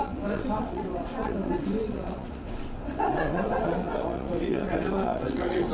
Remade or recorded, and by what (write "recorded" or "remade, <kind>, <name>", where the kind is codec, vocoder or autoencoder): remade, vocoder, WaveNeXt